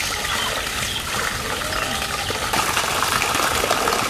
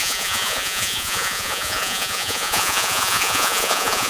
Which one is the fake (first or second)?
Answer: second